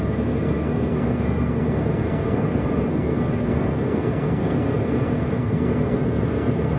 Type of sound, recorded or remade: remade